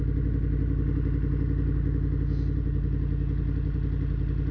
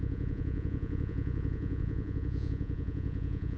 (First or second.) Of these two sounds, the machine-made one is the second